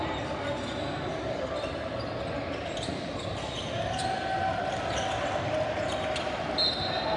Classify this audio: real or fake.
real